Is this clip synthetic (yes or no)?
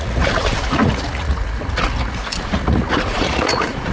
yes